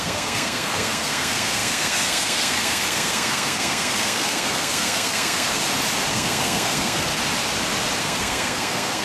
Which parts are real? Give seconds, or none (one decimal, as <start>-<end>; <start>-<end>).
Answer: 5.6-6.1; 7.1-8.0